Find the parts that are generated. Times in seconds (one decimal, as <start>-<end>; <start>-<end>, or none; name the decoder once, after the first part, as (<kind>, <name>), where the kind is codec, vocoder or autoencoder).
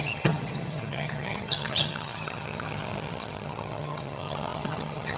0.0-5.2 (vocoder, HiFi-GAN)